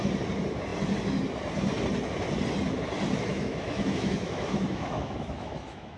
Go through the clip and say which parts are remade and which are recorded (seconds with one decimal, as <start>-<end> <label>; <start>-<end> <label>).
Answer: 0.0-3.3 recorded; 3.3-6.0 remade